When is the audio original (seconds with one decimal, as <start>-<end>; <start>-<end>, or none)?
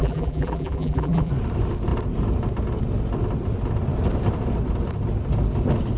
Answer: 1.3-6.0